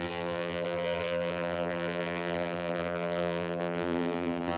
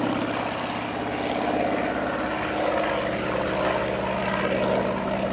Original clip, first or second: second